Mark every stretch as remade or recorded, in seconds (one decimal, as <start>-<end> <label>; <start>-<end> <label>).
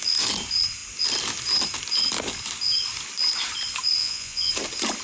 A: 0.0-4.0 recorded; 4.0-4.5 remade; 4.5-5.0 recorded